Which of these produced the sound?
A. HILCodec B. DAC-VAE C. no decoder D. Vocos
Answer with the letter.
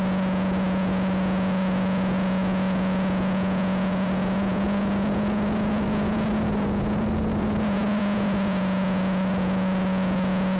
D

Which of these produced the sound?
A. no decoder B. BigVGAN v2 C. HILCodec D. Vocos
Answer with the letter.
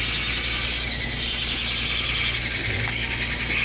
A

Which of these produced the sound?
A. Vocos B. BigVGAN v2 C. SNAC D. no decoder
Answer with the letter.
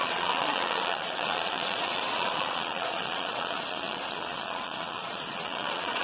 A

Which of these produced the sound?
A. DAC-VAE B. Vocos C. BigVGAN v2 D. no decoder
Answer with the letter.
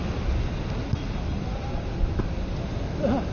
D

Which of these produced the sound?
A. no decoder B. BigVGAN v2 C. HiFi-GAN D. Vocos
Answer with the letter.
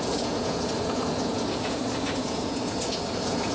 D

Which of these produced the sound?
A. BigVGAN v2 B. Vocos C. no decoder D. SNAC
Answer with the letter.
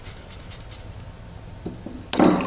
C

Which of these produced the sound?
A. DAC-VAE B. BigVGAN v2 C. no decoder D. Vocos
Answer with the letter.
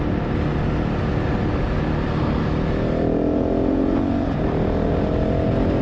C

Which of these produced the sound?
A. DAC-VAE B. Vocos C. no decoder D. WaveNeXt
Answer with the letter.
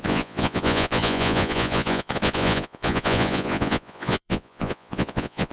B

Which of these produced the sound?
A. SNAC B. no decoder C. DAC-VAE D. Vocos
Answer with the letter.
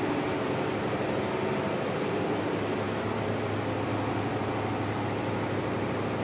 B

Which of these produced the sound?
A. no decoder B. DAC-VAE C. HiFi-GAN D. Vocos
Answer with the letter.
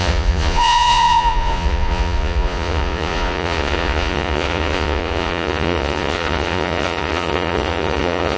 D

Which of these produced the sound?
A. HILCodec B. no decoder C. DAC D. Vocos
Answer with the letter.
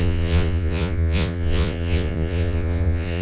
D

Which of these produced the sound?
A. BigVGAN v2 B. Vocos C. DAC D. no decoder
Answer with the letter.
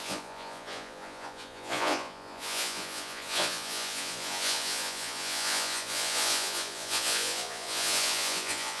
B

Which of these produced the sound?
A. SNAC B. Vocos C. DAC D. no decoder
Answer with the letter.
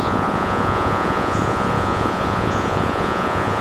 B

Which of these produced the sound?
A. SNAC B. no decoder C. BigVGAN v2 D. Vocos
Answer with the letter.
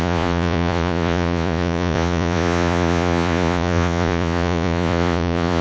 D